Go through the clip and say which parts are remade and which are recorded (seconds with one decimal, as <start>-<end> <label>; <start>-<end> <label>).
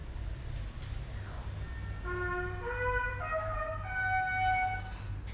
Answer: 0.0-5.3 recorded